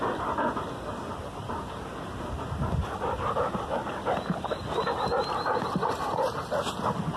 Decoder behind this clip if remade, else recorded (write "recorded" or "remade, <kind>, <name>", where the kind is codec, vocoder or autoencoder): recorded